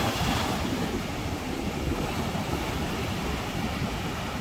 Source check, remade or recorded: recorded